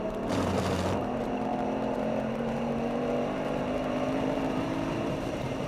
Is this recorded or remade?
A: remade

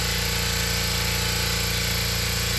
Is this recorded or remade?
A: recorded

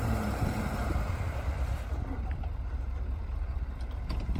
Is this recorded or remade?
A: remade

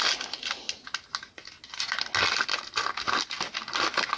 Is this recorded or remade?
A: recorded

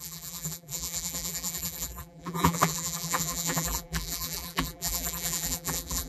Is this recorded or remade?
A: remade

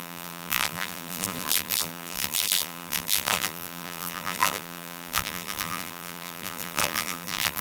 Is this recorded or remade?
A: remade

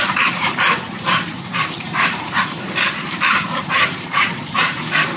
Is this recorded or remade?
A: remade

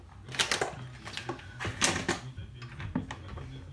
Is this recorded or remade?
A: recorded